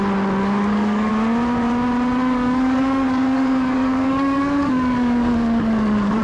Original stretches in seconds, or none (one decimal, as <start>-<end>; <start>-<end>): 0.0-0.4; 1.1-2.2